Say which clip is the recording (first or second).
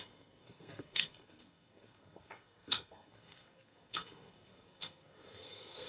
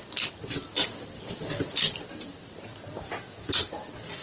second